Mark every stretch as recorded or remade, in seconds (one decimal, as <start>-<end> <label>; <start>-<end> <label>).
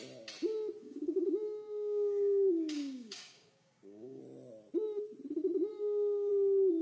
0.0-0.8 recorded; 0.8-4.2 remade; 4.2-5.7 recorded; 5.7-6.3 remade; 6.3-6.8 recorded